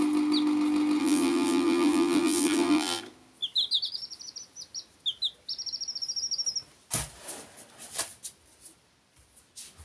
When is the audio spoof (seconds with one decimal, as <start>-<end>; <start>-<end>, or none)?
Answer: 1.0-3.0